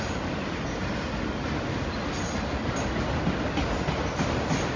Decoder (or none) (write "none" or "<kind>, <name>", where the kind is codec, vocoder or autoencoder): none